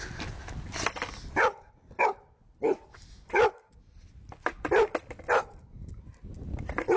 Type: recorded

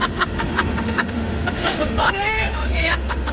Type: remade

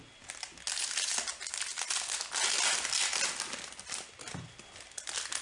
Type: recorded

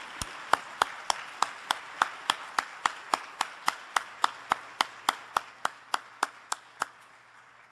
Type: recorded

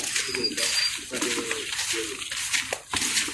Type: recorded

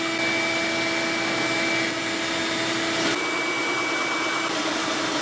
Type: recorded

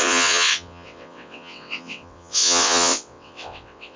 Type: remade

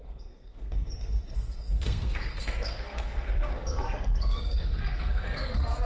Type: remade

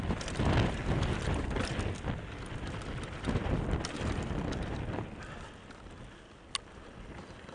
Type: recorded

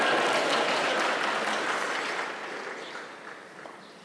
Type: recorded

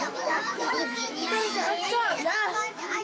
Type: remade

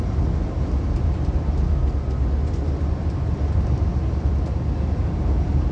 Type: recorded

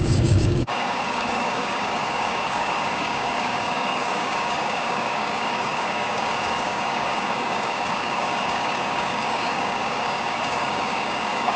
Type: remade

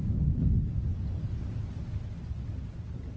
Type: recorded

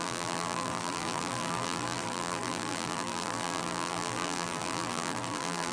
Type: remade